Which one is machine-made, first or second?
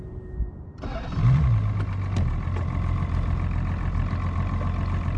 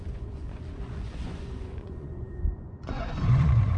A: second